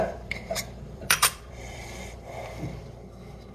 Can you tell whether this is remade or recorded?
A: remade